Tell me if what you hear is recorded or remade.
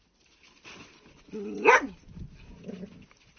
recorded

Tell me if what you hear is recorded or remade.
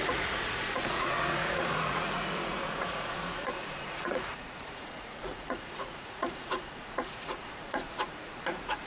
remade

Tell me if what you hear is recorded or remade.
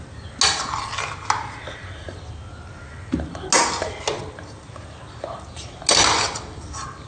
recorded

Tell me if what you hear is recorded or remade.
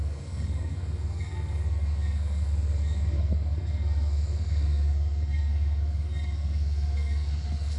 remade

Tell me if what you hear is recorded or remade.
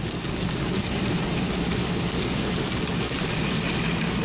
recorded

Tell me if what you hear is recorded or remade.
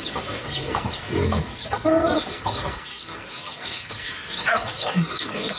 remade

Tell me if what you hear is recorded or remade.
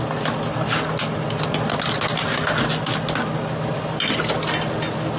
recorded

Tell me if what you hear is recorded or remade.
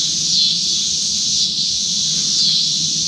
recorded